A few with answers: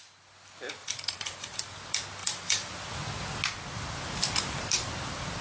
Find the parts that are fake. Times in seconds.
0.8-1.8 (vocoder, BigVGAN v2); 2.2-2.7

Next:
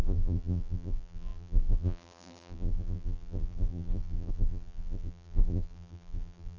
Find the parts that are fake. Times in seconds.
0.0-6.6 (vocoder, BigVGAN v2)

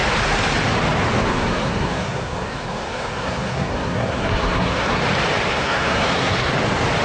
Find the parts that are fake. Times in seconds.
1.2-5.0 (codec, SNAC); 5.5-6.5

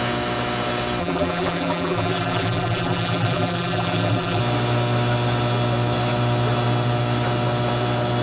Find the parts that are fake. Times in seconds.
1.0-4.4 (vocoder, BigVGAN v2)

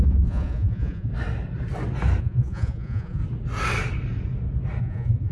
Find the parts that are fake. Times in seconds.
0.0-1.1 (vocoder, Vocos); 2.2-3.2; 4.8-5.3

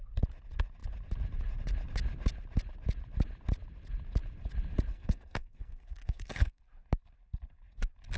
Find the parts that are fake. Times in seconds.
4.9-6.6 (codec, SNAC)

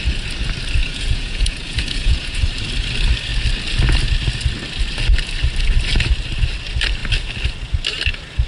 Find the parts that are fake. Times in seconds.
0.8-2.4 (vocoder, Vocos)